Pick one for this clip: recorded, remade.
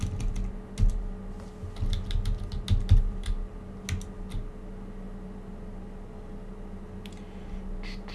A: recorded